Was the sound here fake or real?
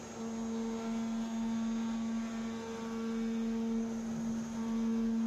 real